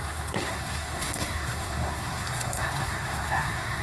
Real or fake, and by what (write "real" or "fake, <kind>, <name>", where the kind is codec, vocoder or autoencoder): fake, codec, SNAC